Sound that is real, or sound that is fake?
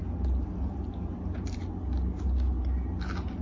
real